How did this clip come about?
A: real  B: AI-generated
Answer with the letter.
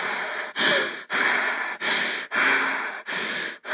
A